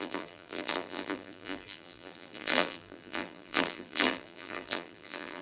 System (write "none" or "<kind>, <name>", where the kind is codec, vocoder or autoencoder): vocoder, BigVGAN v2